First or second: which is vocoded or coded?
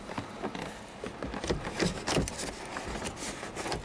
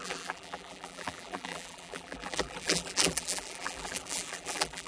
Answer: second